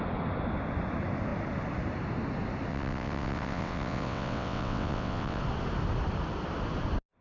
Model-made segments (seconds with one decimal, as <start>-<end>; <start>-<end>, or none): 2.7-5.4